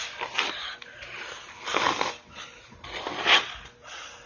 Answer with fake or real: real